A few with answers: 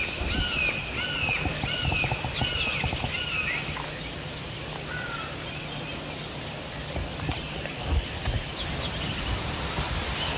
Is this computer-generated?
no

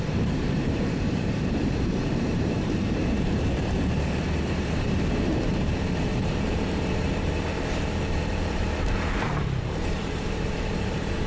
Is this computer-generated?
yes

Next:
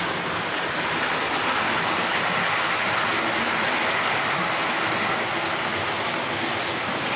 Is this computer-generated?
no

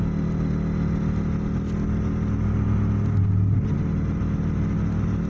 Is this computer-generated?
no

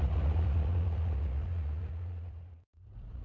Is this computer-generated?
yes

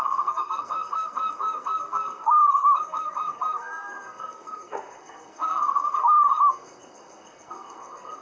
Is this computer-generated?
yes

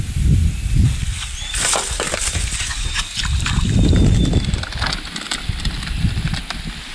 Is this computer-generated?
no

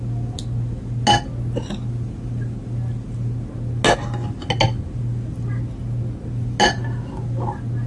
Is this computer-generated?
no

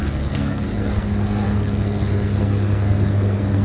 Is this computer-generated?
yes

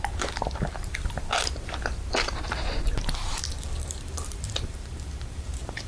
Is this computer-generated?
yes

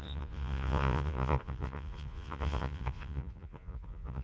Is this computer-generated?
yes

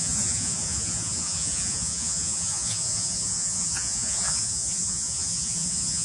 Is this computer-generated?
yes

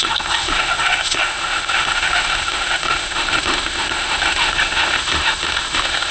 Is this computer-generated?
yes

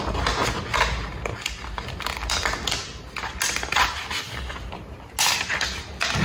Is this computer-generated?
no